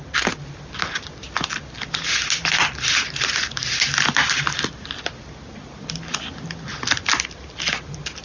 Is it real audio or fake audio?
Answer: real